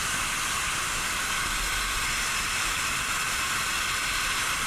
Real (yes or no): yes